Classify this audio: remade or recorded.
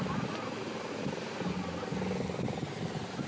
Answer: recorded